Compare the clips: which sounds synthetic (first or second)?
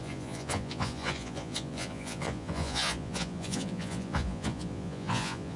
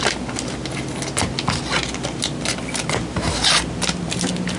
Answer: first